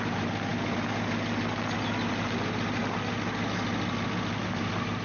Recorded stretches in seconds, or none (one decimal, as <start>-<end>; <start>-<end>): 0.5-2.1; 2.8-4.4